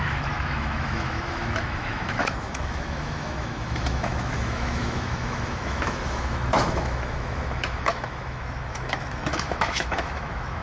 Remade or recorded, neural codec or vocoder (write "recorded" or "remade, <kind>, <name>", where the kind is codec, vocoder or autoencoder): remade, autoencoder, DAC-VAE